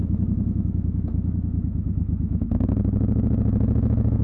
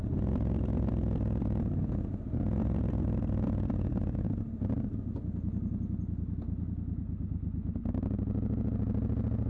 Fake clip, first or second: first